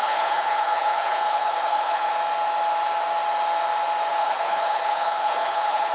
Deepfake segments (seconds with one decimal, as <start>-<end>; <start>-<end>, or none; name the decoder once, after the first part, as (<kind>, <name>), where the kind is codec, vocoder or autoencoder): 0.0-2.1 (codec, HILCodec); 4.1-5.9